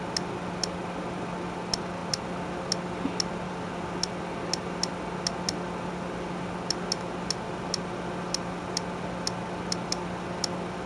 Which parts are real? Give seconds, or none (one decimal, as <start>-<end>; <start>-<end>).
0.0-10.9